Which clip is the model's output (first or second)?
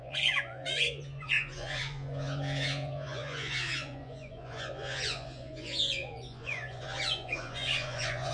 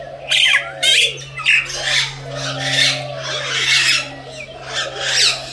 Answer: first